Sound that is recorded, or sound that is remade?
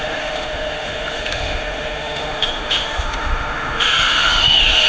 remade